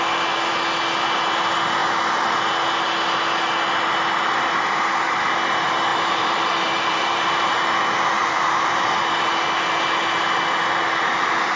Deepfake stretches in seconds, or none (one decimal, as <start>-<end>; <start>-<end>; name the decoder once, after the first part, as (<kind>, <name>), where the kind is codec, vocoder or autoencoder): 5.9-7.6 (vocoder, BigVGAN v2); 8.1-9.3